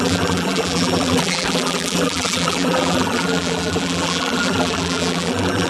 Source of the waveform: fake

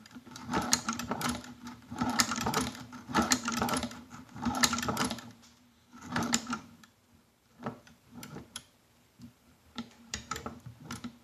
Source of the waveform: fake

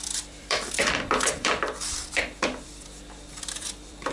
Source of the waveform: fake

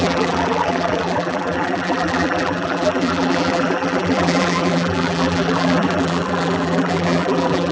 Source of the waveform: fake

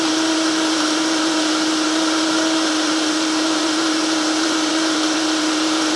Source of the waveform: fake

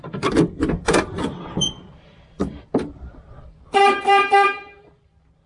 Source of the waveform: fake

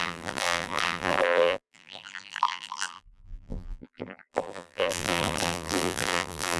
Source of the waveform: fake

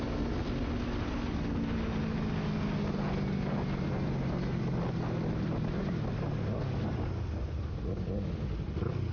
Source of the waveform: real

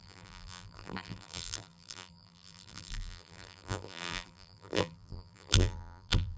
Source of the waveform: fake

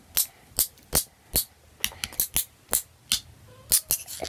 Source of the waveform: real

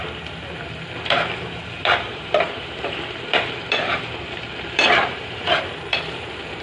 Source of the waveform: fake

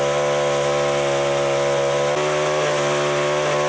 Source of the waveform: real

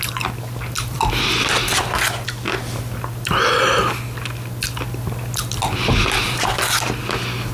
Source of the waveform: real